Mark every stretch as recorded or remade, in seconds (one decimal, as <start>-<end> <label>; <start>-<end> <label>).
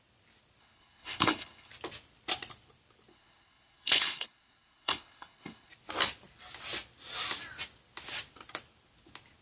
0.0-0.6 recorded; 0.6-1.7 remade; 1.7-3.1 recorded; 3.1-5.7 remade; 5.7-9.4 recorded